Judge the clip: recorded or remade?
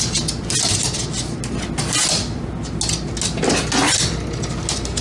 recorded